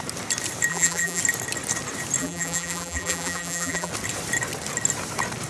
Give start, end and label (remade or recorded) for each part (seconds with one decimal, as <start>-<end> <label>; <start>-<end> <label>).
0.0-0.7 recorded; 0.7-1.2 remade; 1.2-2.2 recorded; 2.2-3.9 remade; 3.9-5.5 recorded